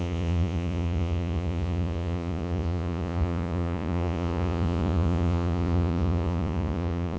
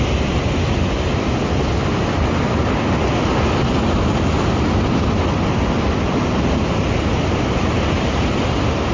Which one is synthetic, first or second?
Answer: first